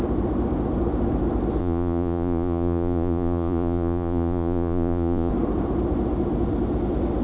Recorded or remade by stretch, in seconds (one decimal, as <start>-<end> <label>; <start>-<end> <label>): 0.0-1.6 recorded; 1.6-5.3 remade; 5.3-7.2 recorded